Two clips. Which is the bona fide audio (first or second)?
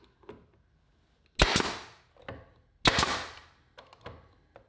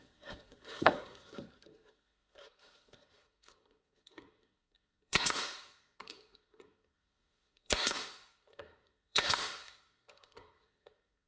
first